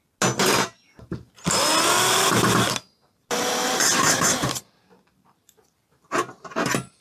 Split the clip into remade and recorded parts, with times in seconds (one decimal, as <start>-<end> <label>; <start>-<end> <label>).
0.0-0.4 recorded; 0.4-1.3 remade; 1.3-3.6 recorded; 3.6-4.6 remade; 4.6-7.0 recorded